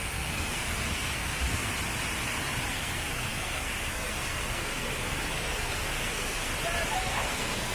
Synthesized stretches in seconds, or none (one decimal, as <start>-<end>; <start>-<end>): 0.0-1.7; 2.7-6.5; 7.0-7.7